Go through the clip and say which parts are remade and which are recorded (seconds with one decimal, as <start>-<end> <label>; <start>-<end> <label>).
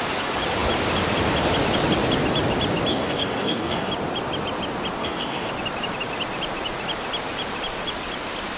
0.0-2.9 recorded; 2.9-3.9 remade; 3.9-5.0 recorded; 5.0-5.5 remade; 5.5-8.6 recorded